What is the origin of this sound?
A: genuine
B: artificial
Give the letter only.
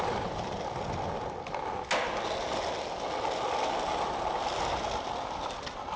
A